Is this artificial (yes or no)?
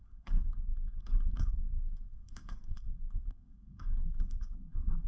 yes